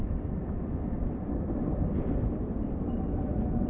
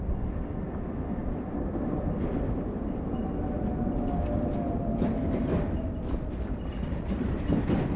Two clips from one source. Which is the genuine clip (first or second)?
second